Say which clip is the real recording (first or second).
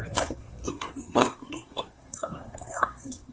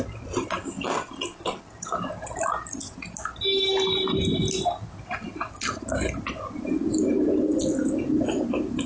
second